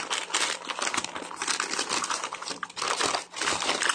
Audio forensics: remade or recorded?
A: recorded